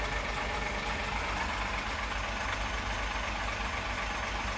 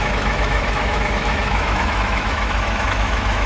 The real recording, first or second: first